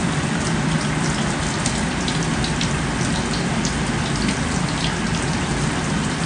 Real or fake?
real